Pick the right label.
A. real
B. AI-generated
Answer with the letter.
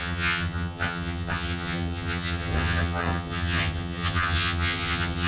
B